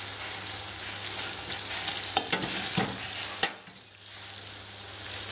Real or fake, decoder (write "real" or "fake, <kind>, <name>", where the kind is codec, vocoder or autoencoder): real